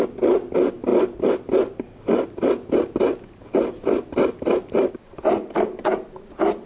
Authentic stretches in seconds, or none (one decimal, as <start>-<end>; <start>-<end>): 0.0-0.9; 4.9-6.7